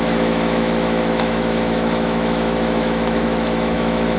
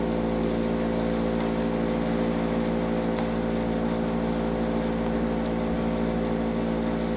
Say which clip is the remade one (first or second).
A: first